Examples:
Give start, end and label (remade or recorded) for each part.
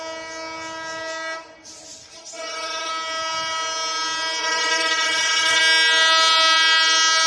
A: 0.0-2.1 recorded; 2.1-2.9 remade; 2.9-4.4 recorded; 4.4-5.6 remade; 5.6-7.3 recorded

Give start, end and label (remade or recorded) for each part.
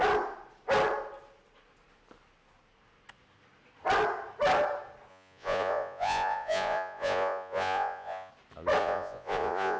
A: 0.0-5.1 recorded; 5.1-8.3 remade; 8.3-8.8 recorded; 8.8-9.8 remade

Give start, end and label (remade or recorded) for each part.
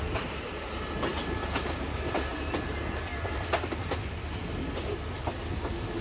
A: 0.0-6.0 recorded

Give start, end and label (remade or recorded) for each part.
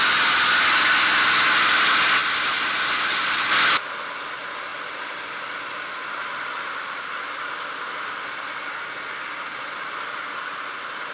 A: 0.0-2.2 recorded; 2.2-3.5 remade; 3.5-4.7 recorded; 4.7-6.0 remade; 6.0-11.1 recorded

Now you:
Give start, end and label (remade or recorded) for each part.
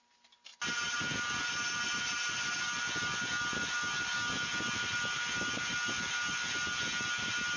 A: 0.0-7.6 recorded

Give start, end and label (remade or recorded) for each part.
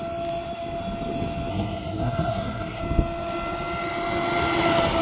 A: 0.0-1.5 recorded; 1.5-2.8 remade; 2.8-5.0 recorded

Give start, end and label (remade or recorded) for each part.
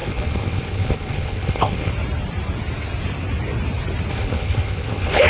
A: 0.0-1.9 remade; 1.9-4.1 recorded; 4.1-5.3 remade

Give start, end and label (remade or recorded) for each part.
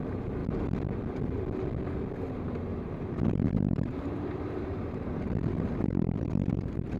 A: 0.0-2.7 recorded; 2.7-7.0 remade